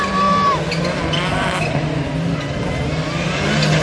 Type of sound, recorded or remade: recorded